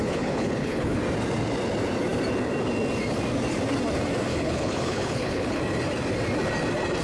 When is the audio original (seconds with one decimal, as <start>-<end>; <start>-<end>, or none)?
1.0-4.3; 5.6-7.0

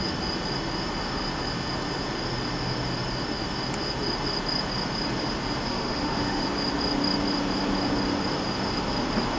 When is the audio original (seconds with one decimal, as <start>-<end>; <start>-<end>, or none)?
0.0-5.7; 6.4-9.4

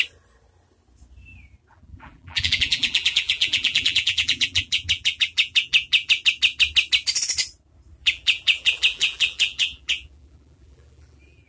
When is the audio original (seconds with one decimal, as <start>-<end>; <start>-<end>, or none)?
0.0-1.7; 6.2-8.0

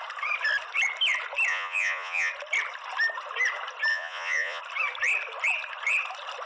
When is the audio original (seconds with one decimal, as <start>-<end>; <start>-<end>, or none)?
0.0-1.5; 2.3-3.9; 4.6-6.5

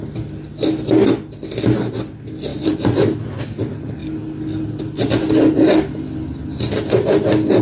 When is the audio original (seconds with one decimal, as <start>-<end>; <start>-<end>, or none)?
0.0-2.5; 3.4-7.6

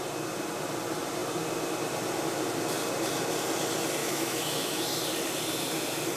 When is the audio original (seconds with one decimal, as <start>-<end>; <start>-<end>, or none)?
0.0-4.0; 4.8-6.2

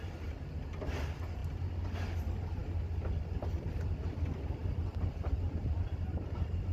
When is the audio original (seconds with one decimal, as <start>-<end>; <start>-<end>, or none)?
0.0-6.7